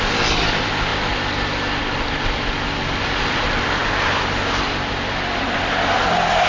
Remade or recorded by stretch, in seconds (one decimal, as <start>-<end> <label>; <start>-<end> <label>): 0.0-6.5 recorded

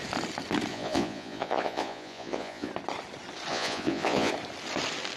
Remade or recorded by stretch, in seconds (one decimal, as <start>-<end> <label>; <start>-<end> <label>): 0.0-0.7 recorded; 0.7-2.7 remade; 2.7-3.5 recorded; 3.5-4.3 remade; 4.3-5.2 recorded